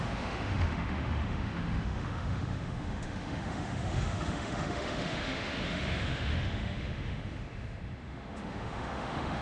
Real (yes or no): no